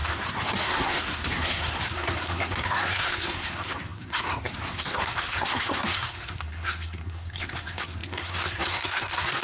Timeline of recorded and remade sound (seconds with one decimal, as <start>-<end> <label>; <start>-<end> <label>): 0.0-9.4 remade